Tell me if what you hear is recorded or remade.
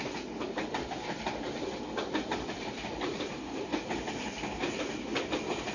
recorded